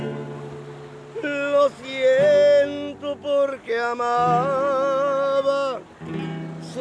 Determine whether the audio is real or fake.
real